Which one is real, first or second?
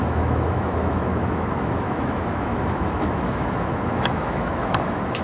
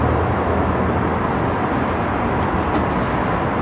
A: second